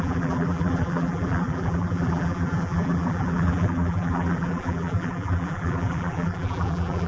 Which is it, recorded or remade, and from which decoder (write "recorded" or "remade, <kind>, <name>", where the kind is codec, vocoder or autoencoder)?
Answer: remade, vocoder, BigVGAN v2